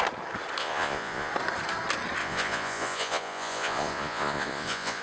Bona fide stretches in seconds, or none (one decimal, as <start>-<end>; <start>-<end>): 0.0-0.6; 1.3-2.2